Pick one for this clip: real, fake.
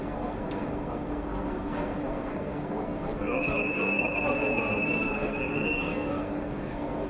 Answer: fake